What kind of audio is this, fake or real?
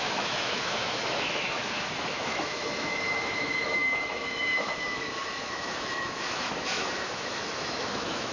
fake